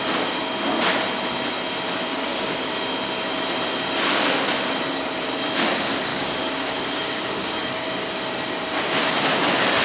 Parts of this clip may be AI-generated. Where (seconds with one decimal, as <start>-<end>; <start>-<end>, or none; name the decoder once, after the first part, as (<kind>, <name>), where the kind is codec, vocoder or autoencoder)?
2.1-2.7 (codec, DAC); 6.1-8.1